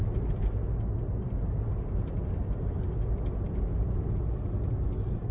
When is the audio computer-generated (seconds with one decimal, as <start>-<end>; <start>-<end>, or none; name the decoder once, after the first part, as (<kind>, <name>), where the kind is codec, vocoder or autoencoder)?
none